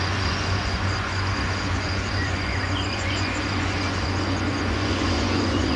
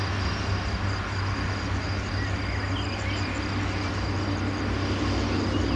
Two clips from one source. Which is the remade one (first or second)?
first